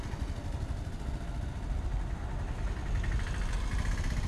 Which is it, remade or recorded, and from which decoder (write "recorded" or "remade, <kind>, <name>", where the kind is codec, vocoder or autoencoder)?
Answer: recorded